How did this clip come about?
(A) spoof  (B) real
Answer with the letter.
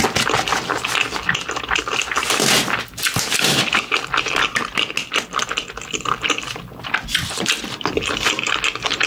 B